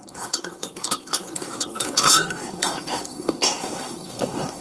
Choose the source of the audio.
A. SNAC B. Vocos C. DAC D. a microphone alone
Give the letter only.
A